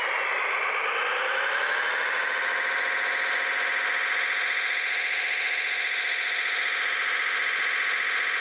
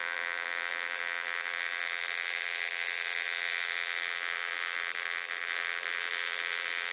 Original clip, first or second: first